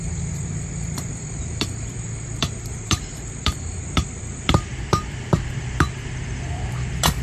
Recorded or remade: remade